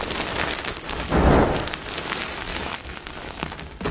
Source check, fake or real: real